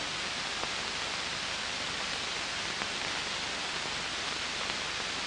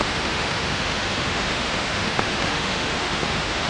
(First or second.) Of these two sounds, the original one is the first